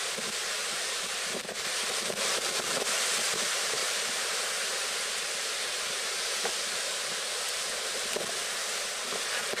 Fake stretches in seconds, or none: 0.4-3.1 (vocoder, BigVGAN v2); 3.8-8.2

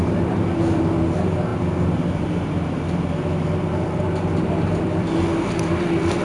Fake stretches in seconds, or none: none

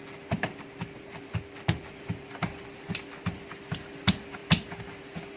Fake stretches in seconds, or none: none